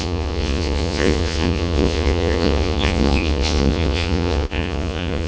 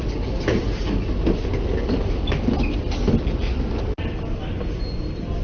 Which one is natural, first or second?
second